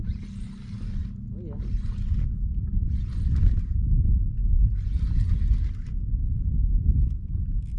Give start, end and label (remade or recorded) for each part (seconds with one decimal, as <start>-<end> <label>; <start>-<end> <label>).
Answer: 0.0-7.8 recorded